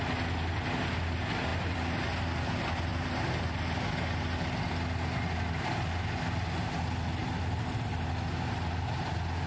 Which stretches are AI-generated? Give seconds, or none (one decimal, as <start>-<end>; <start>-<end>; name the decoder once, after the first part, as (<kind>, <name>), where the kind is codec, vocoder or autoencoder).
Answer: 1.5-2.0 (vocoder, BigVGAN v2); 2.9-3.8; 7.2-7.9